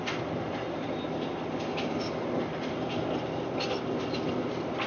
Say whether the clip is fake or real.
real